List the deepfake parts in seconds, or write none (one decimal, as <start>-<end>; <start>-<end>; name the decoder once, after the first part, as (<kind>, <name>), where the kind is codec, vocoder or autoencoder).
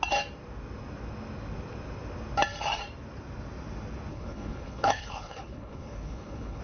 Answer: 4.1-6.6 (codec, HILCodec)